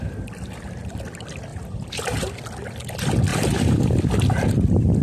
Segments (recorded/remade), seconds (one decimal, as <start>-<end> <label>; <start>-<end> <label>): 0.0-1.5 recorded; 1.5-2.4 remade; 2.4-3.3 recorded; 3.3-4.0 remade; 4.0-5.0 recorded